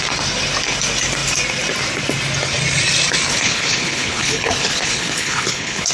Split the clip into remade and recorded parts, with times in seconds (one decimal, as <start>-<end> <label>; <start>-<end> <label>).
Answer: 0.0-3.3 recorded; 3.3-5.9 remade